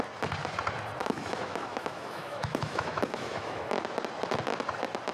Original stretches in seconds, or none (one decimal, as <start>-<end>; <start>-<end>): 0.0-1.0; 3.7-5.1